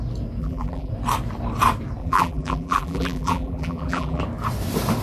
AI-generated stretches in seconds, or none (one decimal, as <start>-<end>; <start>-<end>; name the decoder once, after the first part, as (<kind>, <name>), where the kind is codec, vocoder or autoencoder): 0.4-0.9 (vocoder, BigVGAN v2); 2.0-4.2

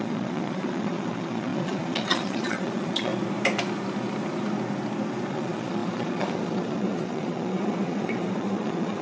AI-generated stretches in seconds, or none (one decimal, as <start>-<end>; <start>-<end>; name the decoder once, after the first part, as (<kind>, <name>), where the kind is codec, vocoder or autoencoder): 0.0-3.1 (vocoder, Vocos); 5.3-9.0

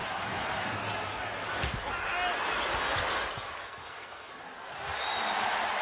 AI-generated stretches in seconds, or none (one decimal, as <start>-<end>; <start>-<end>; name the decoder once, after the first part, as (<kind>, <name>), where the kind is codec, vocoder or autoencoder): 3.6-4.3 (codec, SNAC)

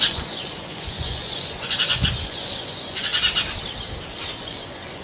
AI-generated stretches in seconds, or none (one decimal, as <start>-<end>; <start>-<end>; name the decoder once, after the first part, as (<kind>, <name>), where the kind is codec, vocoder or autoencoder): 0.0-3.1 (vocoder, Vocos); 4.3-5.0